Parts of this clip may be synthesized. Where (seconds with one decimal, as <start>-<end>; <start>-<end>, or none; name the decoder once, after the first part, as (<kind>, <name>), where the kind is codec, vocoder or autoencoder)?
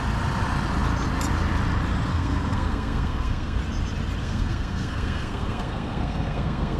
2.1-3.6 (codec, SNAC); 4.2-6.8